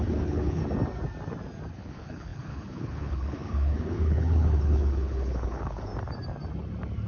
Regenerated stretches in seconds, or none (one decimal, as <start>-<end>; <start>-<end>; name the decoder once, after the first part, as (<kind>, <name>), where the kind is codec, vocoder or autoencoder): 0.0-0.6 (codec, HILCodec); 1.7-5.9